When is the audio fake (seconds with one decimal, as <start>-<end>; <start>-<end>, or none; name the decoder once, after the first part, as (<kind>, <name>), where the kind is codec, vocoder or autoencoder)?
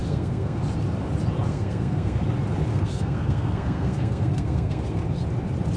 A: 0.0-0.6 (codec, SNAC); 1.5-2.2; 2.7-5.0